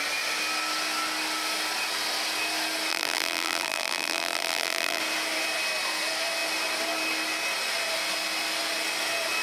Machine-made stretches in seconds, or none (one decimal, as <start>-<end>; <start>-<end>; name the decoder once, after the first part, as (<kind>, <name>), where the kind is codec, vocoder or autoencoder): 2.9-5.0 (vocoder, BigVGAN v2)